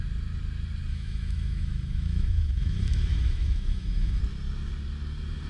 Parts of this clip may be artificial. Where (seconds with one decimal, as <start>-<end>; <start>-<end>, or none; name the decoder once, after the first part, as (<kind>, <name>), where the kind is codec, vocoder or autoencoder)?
0.9-4.2 (autoencoder, DAC-VAE)